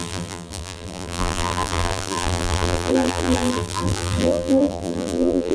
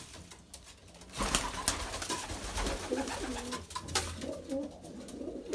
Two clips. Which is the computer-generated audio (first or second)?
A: first